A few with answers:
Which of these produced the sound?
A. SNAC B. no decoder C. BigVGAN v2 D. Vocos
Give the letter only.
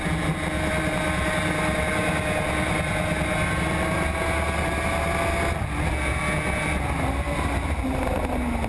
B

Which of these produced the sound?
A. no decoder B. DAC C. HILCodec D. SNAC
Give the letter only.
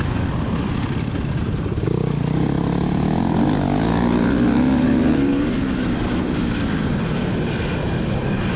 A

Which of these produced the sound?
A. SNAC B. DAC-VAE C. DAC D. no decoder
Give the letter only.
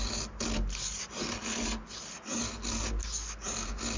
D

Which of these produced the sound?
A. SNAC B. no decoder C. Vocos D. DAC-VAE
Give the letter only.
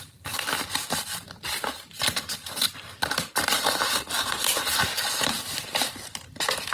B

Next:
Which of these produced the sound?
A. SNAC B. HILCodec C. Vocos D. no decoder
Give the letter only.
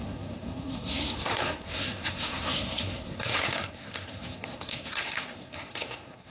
A